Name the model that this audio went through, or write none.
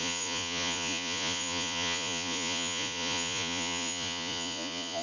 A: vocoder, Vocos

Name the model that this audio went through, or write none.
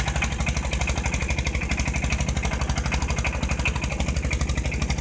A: none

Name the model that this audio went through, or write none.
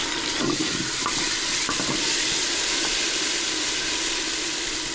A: none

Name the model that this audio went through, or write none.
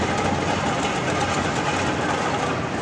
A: none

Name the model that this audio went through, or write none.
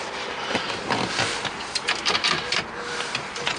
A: none